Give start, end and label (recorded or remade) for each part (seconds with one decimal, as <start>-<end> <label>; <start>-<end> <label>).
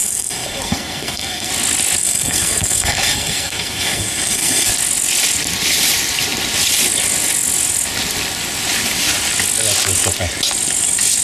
0.0-1.5 remade; 1.5-2.0 recorded; 2.0-4.7 remade; 4.7-11.2 recorded